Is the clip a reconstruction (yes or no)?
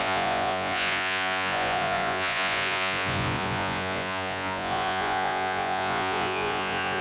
yes